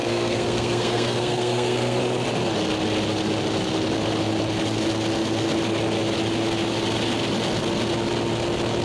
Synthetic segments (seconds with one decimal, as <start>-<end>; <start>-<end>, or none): 0.0-2.0